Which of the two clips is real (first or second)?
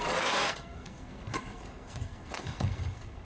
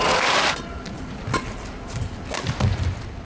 second